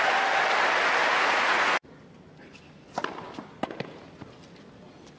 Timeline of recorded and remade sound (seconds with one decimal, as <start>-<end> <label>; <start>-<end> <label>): 0.0-1.0 recorded; 1.0-2.0 remade; 2.0-5.2 recorded